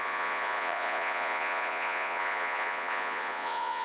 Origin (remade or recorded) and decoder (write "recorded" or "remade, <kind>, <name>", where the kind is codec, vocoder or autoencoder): remade, vocoder, Vocos